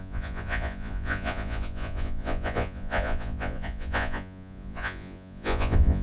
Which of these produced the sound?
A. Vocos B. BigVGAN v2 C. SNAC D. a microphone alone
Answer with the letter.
A